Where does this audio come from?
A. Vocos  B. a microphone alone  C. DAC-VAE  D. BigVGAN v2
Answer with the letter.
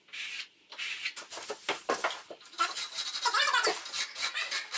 B